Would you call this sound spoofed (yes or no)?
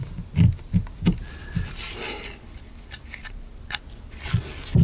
no